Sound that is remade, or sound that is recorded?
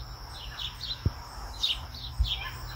recorded